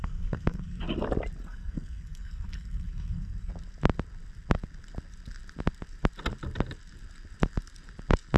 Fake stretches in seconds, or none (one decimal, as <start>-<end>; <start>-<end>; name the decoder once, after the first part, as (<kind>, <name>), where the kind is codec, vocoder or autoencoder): 0.0-0.8 (codec, SNAC); 1.4-3.5